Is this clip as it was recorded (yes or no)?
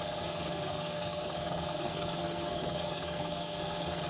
no